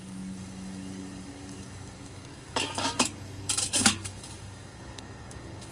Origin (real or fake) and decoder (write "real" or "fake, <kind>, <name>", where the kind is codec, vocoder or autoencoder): fake, codec, DAC